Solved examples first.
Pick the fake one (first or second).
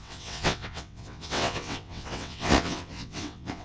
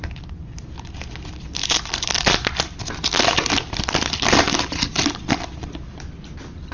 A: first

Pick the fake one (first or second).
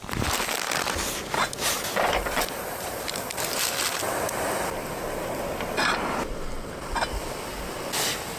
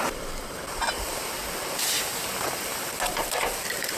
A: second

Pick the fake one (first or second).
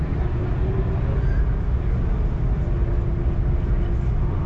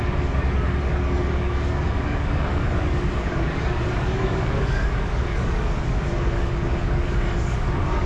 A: second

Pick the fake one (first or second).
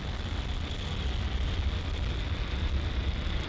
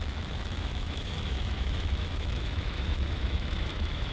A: second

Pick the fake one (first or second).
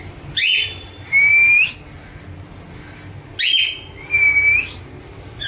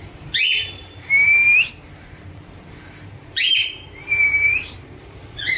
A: second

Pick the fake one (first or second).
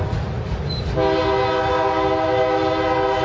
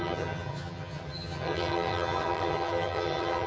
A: second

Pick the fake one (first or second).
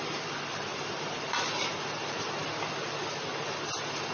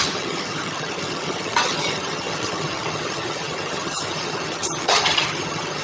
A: second